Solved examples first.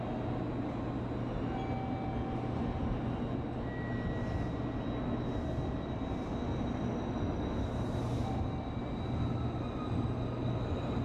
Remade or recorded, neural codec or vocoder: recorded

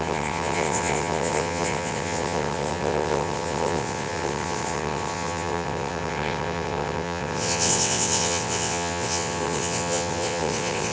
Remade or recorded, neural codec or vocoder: remade, vocoder, WaveNeXt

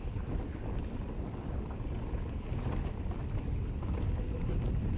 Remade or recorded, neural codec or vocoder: recorded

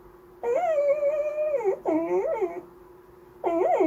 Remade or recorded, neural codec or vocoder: recorded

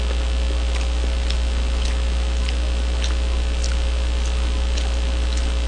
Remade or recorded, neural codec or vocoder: recorded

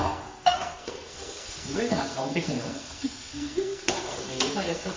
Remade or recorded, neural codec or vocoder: remade, codec, SNAC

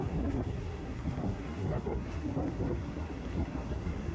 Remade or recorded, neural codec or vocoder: remade, codec, SNAC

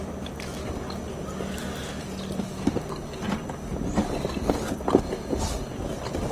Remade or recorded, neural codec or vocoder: recorded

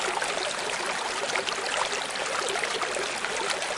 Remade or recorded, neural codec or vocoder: recorded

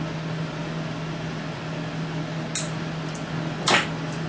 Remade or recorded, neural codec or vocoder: recorded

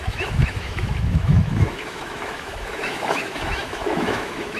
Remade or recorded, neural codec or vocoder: remade, autoencoder, DAC-VAE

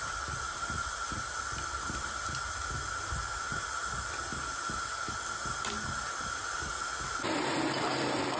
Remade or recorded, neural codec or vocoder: recorded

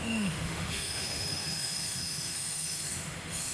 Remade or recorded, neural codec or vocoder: remade, autoencoder, DAC-VAE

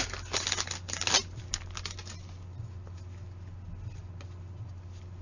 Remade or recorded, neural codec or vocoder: recorded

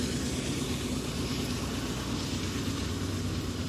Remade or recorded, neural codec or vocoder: recorded